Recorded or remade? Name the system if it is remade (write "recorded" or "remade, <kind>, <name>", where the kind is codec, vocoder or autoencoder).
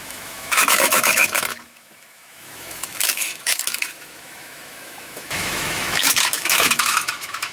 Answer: remade, autoencoder, DAC-VAE